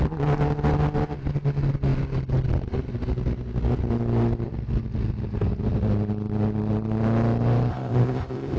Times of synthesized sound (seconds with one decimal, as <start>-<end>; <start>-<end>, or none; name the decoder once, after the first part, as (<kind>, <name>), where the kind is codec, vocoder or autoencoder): 7.7-8.6 (codec, ZipCodec)